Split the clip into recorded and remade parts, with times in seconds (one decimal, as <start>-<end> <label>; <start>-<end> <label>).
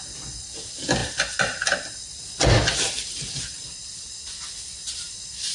0.0-5.5 recorded